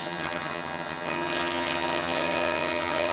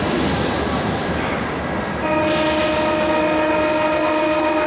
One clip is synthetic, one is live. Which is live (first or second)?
second